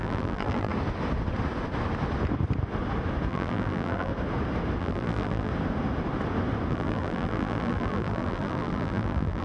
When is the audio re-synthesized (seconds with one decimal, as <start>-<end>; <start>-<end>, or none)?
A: 0.0-0.7; 3.3-4.1; 4.8-5.5; 6.7-9.4